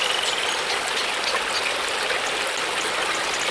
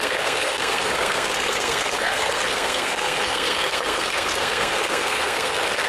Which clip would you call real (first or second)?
first